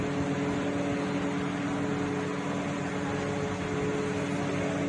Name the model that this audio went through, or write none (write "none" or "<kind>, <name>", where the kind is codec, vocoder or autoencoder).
none